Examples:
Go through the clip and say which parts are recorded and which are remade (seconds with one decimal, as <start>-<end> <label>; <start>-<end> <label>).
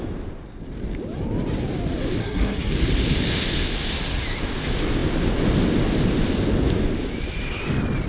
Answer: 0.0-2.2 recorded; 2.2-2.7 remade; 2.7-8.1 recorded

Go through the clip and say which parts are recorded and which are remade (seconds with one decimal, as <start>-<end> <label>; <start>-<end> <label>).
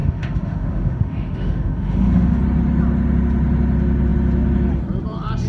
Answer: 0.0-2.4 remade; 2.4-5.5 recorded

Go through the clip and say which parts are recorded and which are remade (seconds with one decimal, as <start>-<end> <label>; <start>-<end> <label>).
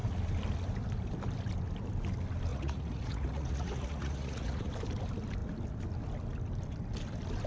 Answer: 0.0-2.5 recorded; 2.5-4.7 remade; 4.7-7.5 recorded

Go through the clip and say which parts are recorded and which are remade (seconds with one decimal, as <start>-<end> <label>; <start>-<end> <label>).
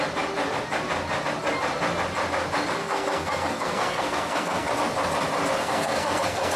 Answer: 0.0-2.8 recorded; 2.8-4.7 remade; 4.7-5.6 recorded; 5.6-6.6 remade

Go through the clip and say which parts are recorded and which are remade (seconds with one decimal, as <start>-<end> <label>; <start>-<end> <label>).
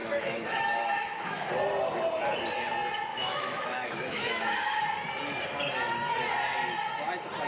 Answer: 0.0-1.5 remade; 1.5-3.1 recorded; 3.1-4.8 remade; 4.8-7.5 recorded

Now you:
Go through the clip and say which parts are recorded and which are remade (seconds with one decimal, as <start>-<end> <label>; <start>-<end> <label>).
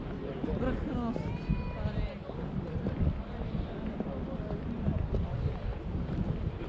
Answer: 0.0-2.2 recorded; 2.2-2.7 remade; 2.7-5.7 recorded; 5.7-6.7 remade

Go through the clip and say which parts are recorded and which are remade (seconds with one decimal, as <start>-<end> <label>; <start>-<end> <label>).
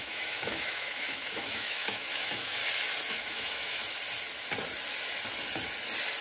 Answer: 0.0-2.6 remade; 2.6-3.1 recorded; 3.1-3.8 remade; 3.8-6.2 recorded